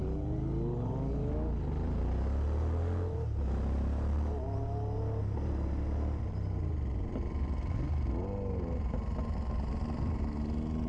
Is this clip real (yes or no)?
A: yes